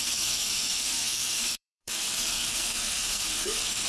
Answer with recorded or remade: remade